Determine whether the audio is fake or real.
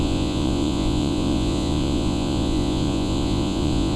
fake